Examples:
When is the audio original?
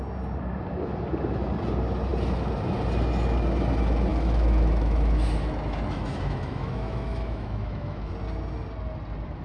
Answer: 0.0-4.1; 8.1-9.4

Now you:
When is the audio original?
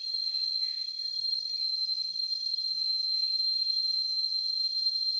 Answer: 0.0-1.1; 4.2-5.2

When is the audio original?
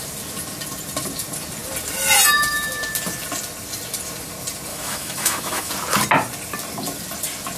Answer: 0.0-4.7; 5.7-7.6